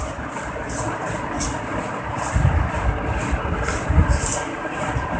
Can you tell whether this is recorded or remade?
recorded